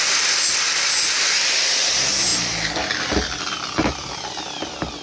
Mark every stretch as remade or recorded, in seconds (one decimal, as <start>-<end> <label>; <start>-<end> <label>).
0.0-5.0 recorded